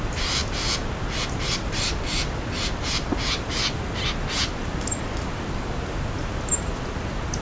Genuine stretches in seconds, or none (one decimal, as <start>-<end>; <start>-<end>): 0.0-7.4